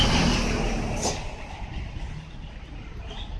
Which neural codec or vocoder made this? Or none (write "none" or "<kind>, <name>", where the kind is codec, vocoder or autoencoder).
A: none